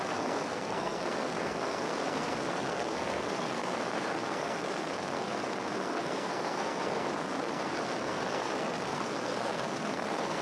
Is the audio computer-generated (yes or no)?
yes